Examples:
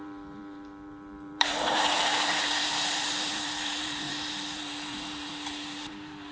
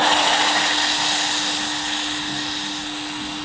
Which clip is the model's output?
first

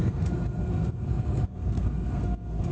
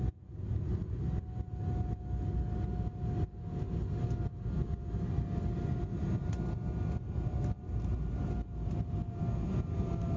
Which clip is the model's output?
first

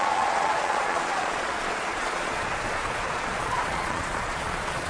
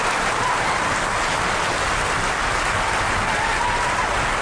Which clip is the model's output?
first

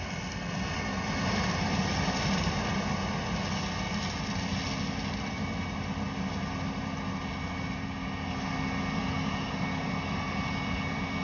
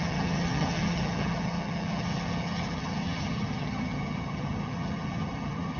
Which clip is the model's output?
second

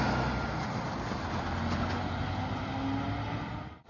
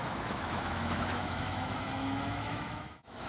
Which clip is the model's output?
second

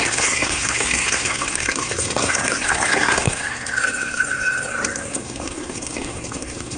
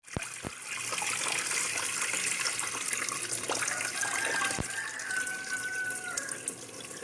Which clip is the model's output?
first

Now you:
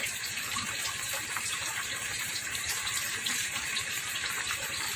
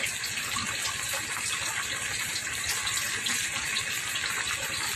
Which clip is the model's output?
first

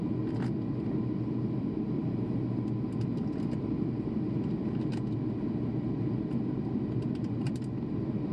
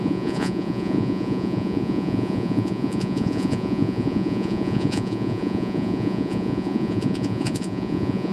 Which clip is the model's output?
second